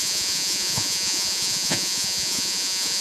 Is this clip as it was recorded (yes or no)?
no